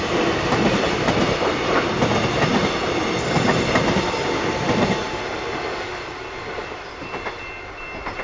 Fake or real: real